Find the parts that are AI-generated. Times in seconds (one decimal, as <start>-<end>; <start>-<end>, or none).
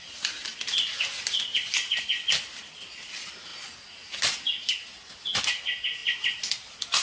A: none